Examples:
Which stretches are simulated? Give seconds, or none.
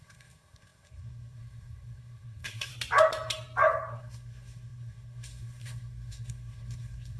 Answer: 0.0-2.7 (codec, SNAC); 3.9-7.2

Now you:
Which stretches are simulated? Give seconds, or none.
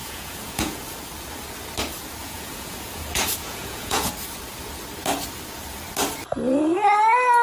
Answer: 0.0-0.8 (vocoder, Vocos); 2.2-4.1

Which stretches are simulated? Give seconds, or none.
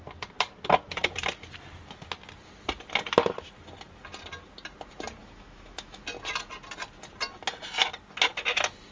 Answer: 5.2-6.0 (autoencoder, DAC-VAE)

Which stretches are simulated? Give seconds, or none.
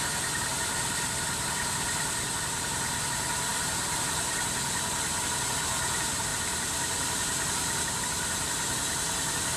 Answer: 0.5-2.5 (vocoder, BigVGAN v2); 3.5-4.4; 6.3-8.0